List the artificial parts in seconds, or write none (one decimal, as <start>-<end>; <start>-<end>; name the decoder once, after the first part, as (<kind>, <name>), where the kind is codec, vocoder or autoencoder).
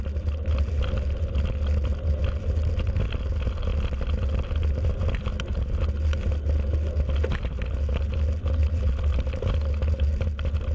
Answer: none